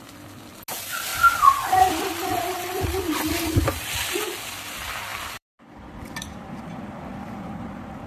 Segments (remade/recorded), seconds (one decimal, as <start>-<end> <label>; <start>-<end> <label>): 0.0-1.1 recorded; 1.1-3.5 remade; 3.5-5.1 recorded; 5.1-6.5 remade; 6.5-7.1 recorded; 7.1-8.1 remade